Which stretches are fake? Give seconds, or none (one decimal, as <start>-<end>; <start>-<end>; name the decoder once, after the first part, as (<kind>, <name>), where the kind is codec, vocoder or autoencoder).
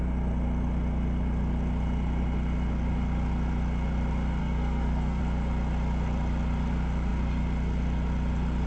4.4-5.2 (codec, SNAC)